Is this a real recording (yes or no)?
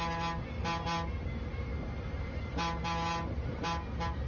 yes